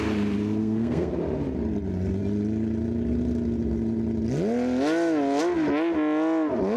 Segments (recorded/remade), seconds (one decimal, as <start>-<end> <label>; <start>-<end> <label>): 0.0-0.6 recorded; 0.6-1.1 remade; 1.1-6.8 recorded